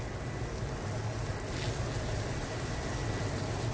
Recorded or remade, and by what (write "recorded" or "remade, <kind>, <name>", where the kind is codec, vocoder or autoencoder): recorded